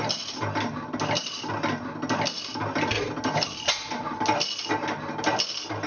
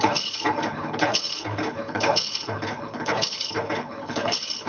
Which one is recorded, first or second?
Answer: first